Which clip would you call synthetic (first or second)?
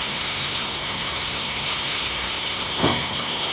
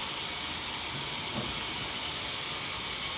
first